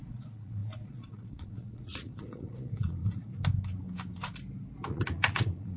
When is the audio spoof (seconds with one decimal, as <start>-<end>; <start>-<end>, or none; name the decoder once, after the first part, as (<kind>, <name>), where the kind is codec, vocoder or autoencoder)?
0.0-3.3 (vocoder, Vocos); 4.9-5.8